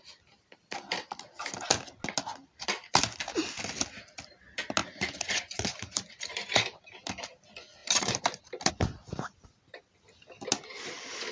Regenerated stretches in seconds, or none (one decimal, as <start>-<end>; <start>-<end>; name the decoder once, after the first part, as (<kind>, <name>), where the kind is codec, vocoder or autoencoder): 2.4-3.0 (vocoder, BigVGAN v2); 4.8-6.8; 7.8-8.7